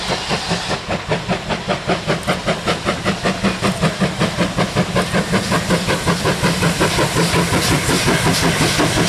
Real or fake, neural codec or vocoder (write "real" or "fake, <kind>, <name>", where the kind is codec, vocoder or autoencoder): real